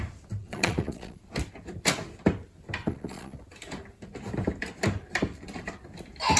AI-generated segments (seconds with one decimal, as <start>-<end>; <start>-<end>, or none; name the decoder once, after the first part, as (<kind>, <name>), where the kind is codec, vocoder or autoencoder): 0.4-1.2 (vocoder, Vocos); 2.8-3.4